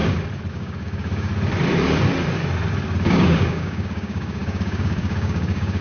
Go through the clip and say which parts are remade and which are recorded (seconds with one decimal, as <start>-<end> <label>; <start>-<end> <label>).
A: 0.0-0.5 recorded; 0.5-1.3 remade; 1.3-3.0 recorded; 3.0-5.8 remade